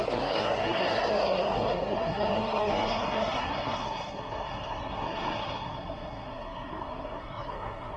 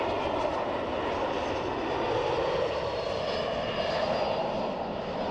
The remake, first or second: first